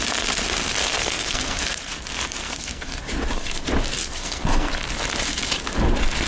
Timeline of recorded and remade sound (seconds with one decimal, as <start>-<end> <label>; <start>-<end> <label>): 0.0-0.8 recorded; 0.8-3.0 remade; 3.0-4.0 recorded; 4.0-4.7 remade; 4.7-6.3 recorded